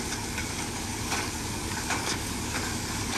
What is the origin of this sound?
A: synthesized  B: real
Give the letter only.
A